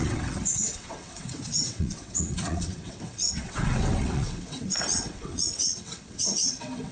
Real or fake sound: fake